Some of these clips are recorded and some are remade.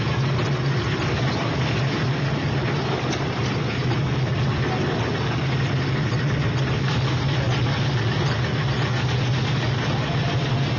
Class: recorded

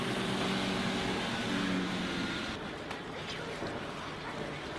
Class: recorded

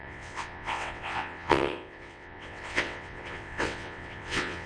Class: remade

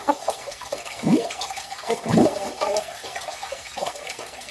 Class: remade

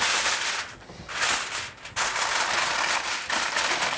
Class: recorded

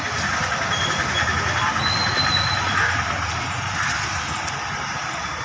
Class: recorded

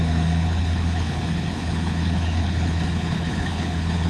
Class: remade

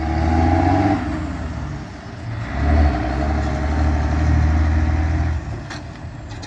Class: recorded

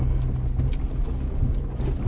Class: recorded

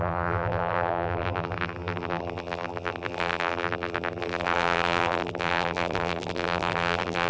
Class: remade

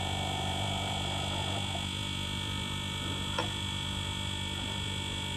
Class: remade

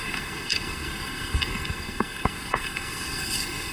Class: remade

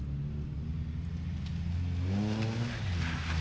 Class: recorded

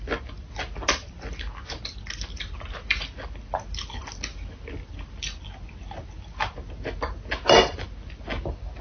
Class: recorded